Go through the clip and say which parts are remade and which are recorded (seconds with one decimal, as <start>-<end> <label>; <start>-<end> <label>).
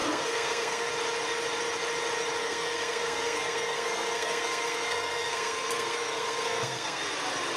0.0-0.9 remade; 0.9-2.4 recorded; 2.4-7.0 remade; 7.0-7.6 recorded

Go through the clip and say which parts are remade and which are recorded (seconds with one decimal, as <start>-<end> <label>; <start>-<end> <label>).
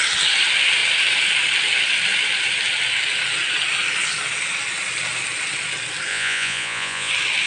0.0-6.1 recorded; 6.1-7.1 remade; 7.1-7.5 recorded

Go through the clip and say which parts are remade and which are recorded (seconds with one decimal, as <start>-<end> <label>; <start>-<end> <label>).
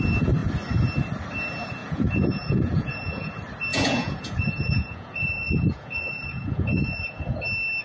0.0-1.8 recorded; 1.8-3.3 remade; 3.3-3.7 recorded; 3.7-7.3 remade; 7.3-7.8 recorded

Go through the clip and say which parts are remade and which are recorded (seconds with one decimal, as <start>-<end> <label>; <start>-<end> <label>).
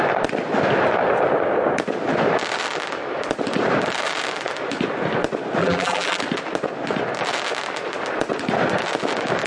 0.0-5.6 recorded; 5.6-6.2 remade; 6.2-9.5 recorded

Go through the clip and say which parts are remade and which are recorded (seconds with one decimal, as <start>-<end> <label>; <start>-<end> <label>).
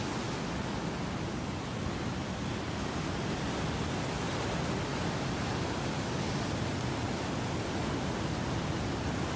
0.0-9.4 recorded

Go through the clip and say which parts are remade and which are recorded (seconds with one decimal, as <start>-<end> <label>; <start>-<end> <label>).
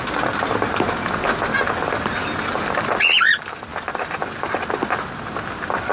0.0-3.7 recorded; 3.7-4.6 remade; 4.6-5.9 recorded